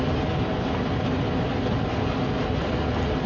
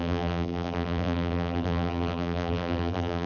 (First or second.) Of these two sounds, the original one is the first